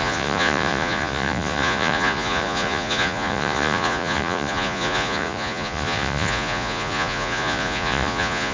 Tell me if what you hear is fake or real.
fake